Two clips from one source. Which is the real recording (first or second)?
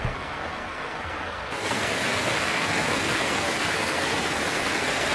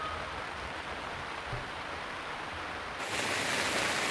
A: second